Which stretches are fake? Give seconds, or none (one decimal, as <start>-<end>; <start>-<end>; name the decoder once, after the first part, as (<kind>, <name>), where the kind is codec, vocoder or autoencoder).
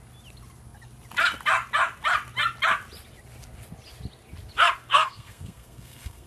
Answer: 4.9-6.3 (codec, SNAC)